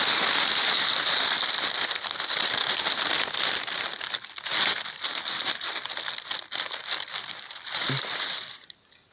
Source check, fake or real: real